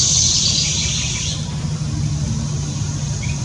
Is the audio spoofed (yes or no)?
no